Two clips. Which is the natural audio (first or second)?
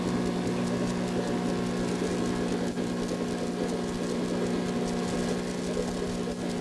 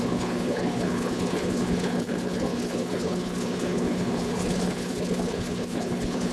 first